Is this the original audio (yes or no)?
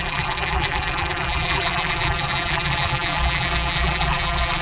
no